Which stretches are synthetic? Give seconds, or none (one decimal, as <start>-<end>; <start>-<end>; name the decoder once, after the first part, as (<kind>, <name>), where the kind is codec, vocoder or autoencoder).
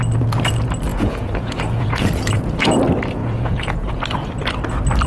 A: 0.9-2.8 (vocoder, Vocos); 3.2-4.0